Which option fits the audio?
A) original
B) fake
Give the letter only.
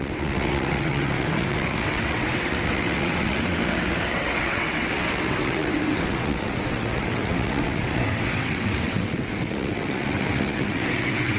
B